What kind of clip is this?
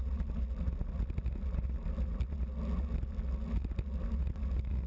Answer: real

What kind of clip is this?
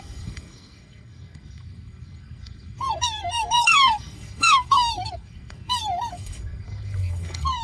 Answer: fake